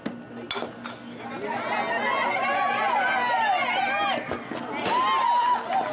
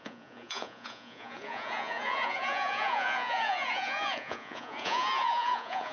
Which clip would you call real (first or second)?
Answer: first